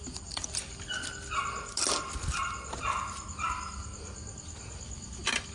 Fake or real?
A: real